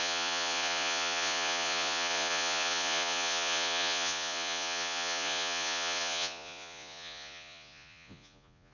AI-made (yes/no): yes